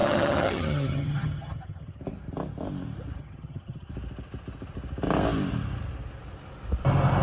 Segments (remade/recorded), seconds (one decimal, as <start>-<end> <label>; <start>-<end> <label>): 0.0-2.0 remade; 2.0-3.2 recorded; 3.2-3.9 remade; 3.9-7.2 recorded